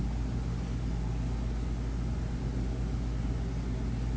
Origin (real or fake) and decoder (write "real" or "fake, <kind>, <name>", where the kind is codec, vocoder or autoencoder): real